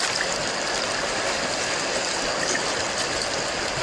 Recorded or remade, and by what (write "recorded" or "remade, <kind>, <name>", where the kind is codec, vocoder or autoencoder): recorded